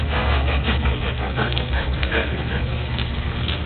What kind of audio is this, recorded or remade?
remade